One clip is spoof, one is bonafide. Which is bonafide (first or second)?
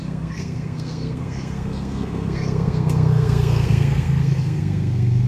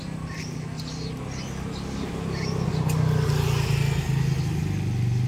second